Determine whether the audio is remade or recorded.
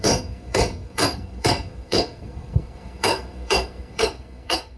remade